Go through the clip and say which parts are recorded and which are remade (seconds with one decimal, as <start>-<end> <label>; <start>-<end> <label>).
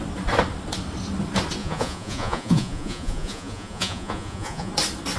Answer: 0.0-1.6 recorded; 1.6-4.7 remade; 4.7-5.2 recorded